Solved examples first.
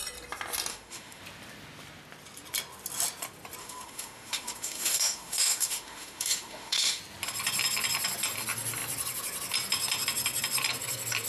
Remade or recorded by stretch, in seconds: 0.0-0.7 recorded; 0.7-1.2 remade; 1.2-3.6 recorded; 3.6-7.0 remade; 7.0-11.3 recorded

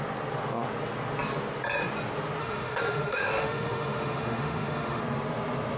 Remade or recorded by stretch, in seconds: 0.0-2.4 recorded; 2.4-5.0 remade; 5.0-5.8 recorded

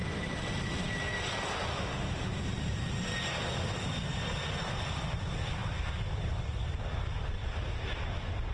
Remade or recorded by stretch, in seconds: 0.0-1.7 recorded; 1.7-2.4 remade; 2.4-8.5 recorded

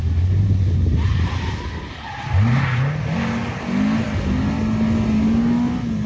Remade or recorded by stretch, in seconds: 0.0-6.1 recorded

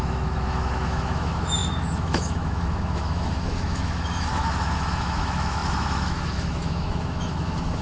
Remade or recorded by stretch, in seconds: 0.0-7.8 remade